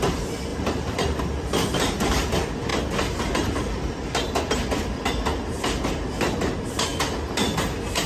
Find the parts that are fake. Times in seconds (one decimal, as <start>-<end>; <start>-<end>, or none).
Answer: 0.5-1.2